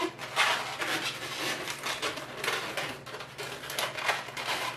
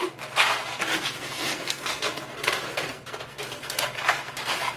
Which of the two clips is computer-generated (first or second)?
second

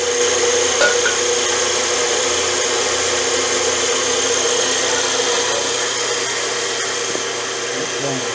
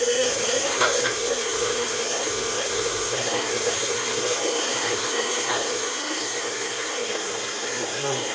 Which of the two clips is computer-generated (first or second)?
second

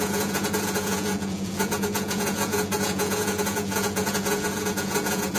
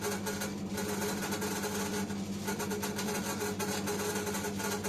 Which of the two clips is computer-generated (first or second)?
first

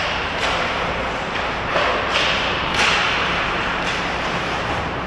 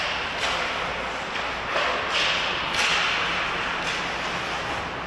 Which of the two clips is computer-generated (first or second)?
first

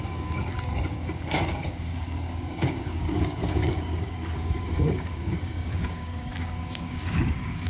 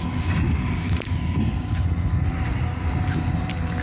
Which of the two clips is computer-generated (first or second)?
first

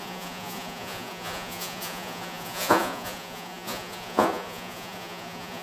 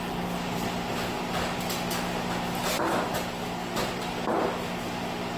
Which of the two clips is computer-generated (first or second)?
first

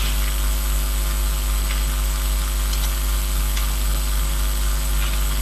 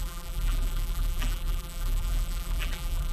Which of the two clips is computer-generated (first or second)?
second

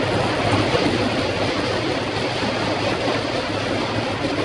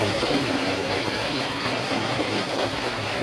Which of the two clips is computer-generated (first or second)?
second